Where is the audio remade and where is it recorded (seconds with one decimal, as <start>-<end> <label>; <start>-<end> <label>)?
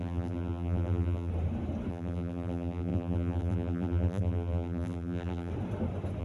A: 0.0-1.3 remade; 1.3-1.9 recorded; 1.9-5.5 remade; 5.5-6.2 recorded